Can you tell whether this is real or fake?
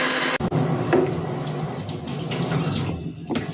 real